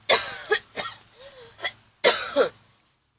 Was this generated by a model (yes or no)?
no